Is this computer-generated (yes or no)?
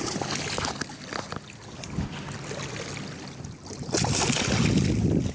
no